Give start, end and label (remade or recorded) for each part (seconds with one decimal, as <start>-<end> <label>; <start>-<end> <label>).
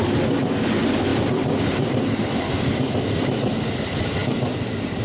0.0-1.1 recorded; 1.1-3.7 remade; 3.7-5.0 recorded